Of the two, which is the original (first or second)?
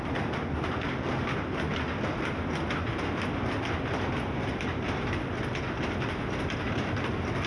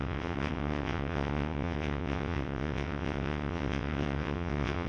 first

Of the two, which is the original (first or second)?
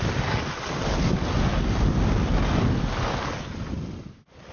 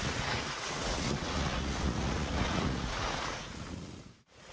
first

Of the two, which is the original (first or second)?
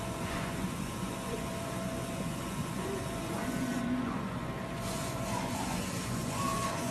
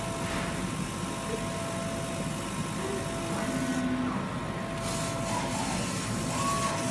second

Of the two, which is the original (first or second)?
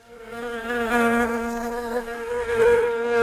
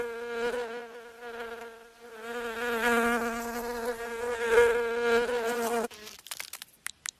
second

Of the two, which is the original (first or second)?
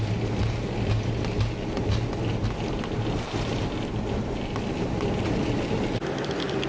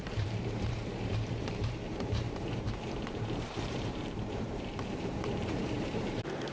first